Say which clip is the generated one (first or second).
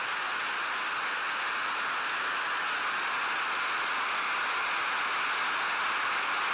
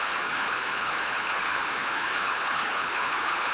second